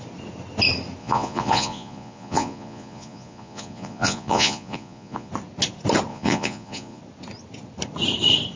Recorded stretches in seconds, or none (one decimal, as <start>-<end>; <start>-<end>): 0.0-1.0; 5.3-6.1; 7.0-8.6